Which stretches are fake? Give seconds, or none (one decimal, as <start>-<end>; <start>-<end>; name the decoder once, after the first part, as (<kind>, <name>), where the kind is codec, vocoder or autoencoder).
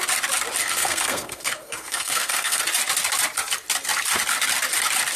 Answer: 0.6-2.6 (codec, SNAC)